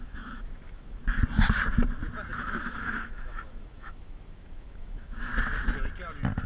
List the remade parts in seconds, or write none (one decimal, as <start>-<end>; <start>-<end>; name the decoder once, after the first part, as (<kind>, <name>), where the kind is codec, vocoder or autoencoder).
0.0-1.0 (autoencoder, DAC-VAE); 2.3-5.3